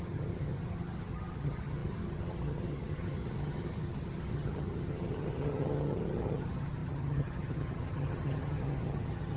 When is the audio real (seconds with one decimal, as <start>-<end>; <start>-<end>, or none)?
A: none